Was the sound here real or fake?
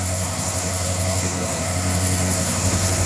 fake